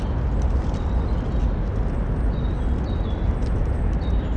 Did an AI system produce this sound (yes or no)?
no